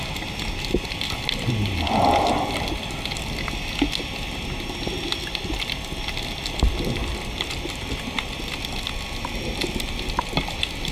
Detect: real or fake real